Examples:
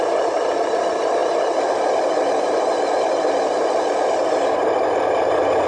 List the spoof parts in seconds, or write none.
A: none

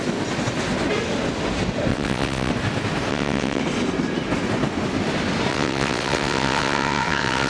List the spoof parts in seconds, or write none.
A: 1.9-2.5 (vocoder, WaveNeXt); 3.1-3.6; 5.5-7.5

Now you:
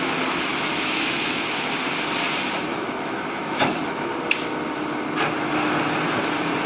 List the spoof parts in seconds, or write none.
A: 0.5-1.7 (autoencoder, DAC-VAE); 2.7-4.1

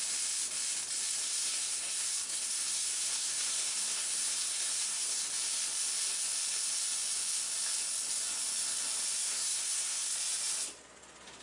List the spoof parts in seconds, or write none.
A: 1.2-5.2 (codec, SNAC); 9.3-10.1